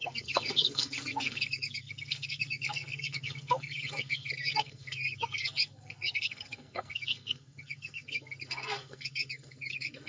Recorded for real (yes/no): no